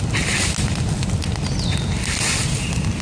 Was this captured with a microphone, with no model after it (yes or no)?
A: yes